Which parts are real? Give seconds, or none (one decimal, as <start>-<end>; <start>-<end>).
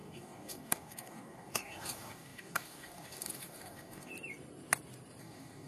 4.1-5.2